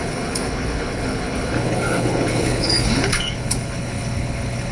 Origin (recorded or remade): remade